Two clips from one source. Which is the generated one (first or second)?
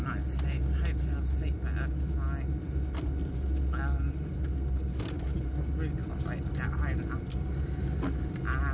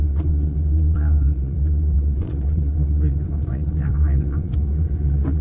second